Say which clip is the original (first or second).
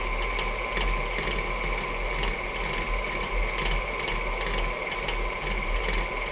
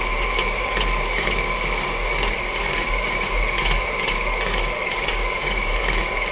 first